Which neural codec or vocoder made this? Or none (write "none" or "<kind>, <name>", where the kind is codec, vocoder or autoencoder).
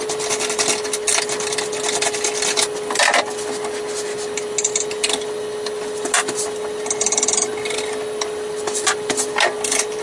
none